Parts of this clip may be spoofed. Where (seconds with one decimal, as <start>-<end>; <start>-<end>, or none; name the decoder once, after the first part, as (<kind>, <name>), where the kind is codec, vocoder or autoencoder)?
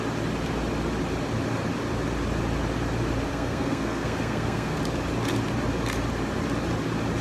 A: 3.3-4.8 (codec, SNAC)